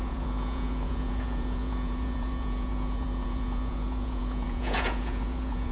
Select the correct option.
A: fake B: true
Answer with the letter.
A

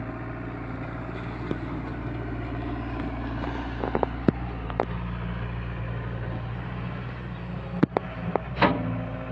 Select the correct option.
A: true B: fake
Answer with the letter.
A